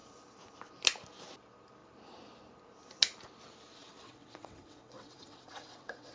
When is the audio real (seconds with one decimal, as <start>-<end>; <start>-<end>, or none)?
0.0-3.7